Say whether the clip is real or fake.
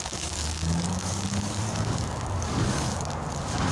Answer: fake